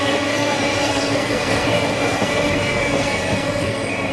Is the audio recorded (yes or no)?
no